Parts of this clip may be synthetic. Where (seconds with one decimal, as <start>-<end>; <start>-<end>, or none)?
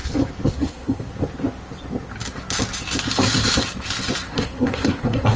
0.5-1.1; 4.3-5.4